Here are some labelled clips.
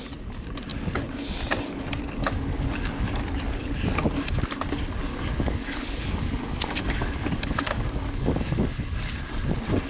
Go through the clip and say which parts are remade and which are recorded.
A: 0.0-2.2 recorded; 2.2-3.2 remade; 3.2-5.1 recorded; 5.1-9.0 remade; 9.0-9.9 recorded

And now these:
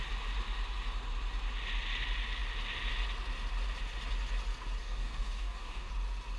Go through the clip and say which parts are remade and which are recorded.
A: 0.0-4.8 recorded; 4.8-5.9 remade; 5.9-6.4 recorded

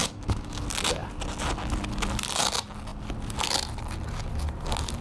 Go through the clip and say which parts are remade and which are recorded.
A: 0.0-0.6 remade; 0.6-5.0 recorded

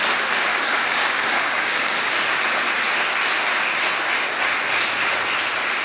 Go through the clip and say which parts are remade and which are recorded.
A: 0.0-0.5 recorded; 0.5-2.4 remade; 2.4-5.8 recorded

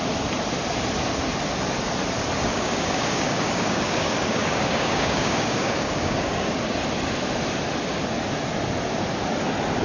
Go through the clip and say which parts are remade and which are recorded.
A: 0.0-2.5 recorded; 2.5-6.6 remade; 6.6-9.8 recorded

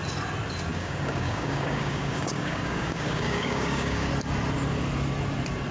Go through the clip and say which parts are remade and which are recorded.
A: 0.0-0.7 recorded; 0.7-4.1 remade; 4.1-5.7 recorded

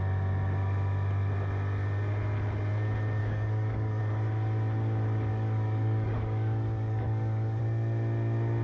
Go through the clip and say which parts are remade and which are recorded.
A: 0.0-3.2 recorded; 3.2-4.0 remade; 4.0-5.3 recorded; 5.3-7.6 remade; 7.6-8.6 recorded